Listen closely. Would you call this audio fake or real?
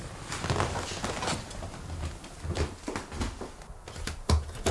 real